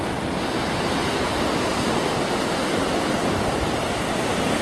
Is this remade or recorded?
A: recorded